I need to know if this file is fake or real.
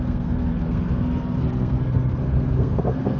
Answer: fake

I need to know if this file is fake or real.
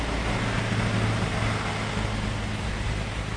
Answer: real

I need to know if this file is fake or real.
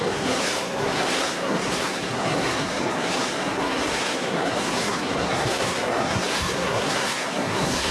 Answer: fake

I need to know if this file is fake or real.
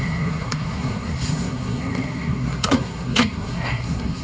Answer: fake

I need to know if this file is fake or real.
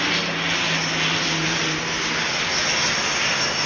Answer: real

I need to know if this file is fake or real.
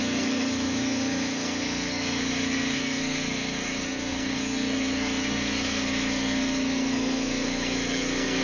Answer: fake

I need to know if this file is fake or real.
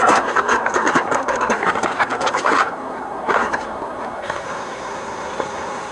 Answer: fake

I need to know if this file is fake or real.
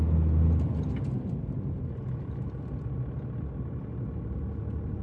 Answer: real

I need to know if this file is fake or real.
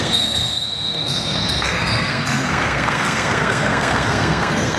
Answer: fake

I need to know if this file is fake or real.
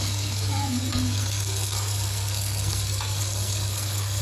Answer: fake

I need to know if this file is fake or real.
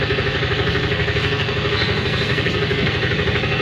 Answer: fake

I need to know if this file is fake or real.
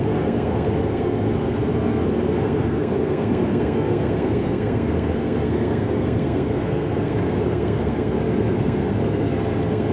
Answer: fake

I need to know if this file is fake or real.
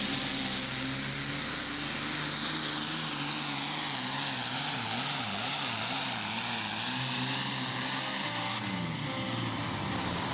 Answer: real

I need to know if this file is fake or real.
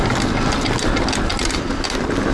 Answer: real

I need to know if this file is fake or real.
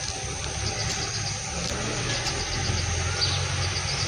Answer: real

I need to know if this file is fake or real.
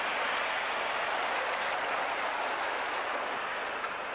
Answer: real